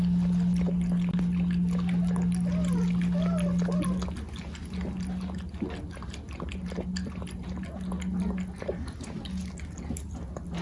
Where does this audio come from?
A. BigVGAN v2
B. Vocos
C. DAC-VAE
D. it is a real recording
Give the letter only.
D